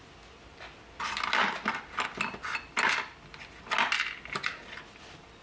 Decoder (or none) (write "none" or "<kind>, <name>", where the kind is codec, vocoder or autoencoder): none